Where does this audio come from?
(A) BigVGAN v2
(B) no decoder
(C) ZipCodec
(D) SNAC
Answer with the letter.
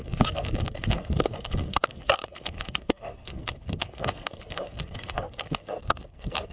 D